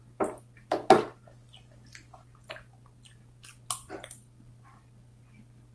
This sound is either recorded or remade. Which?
recorded